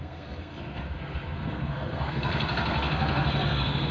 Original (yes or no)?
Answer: no